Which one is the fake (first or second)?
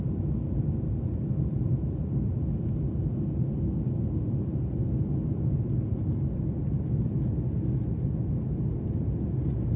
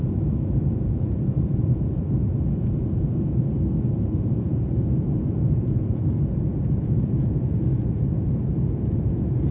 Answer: second